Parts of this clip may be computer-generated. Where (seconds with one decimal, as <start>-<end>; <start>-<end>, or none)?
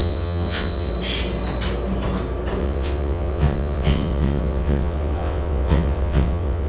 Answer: 0.0-0.9; 2.6-6.7